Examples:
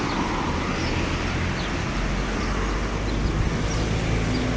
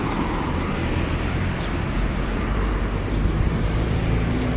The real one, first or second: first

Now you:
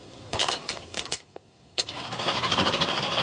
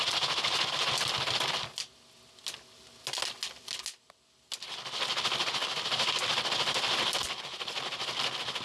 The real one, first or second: second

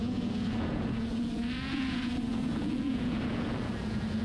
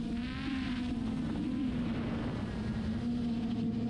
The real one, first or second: second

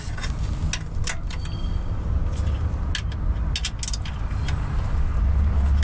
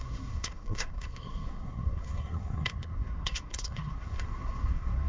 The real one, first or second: first